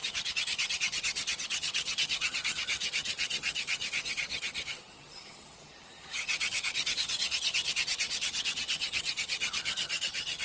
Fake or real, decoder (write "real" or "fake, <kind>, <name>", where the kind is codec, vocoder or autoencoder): fake, vocoder, HiFi-GAN